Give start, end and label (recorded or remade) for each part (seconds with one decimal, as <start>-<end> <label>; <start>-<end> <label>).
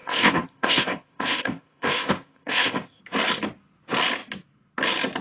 0.0-3.0 remade; 3.0-5.2 recorded